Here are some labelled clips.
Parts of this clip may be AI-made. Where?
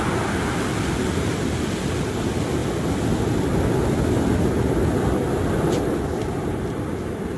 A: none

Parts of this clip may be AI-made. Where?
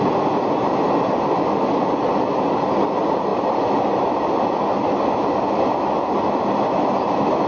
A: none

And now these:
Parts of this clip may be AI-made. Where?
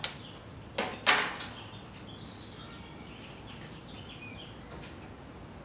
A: none